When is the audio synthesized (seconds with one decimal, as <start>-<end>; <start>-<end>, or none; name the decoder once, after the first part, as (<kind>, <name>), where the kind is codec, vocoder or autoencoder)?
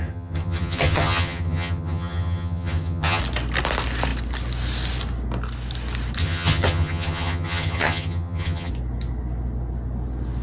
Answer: 0.0-3.2 (vocoder, HiFi-GAN); 6.2-8.7